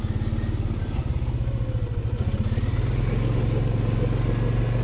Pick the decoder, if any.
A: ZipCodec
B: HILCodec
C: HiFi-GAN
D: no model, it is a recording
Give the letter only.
D